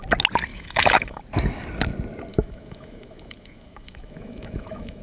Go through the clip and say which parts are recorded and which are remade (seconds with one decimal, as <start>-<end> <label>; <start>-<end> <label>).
0.0-0.5 recorded; 0.5-1.2 remade; 1.2-2.3 recorded; 2.3-5.0 remade

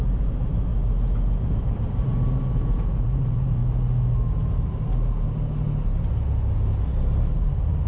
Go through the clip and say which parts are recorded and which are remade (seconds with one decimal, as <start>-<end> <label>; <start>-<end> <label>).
0.0-0.7 remade; 0.7-1.5 recorded; 1.5-3.6 remade; 3.6-7.2 recorded; 7.2-7.9 remade